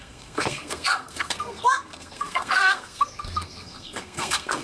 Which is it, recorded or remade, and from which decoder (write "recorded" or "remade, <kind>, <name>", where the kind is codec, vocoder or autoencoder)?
remade, codec, SNAC